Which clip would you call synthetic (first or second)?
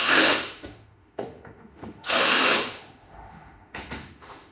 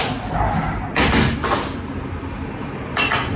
first